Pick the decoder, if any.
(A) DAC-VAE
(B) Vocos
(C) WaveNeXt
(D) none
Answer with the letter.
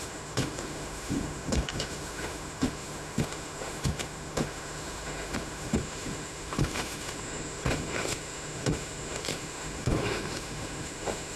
A